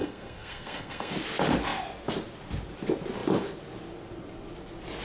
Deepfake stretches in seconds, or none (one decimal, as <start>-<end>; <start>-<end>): 0.0-1.1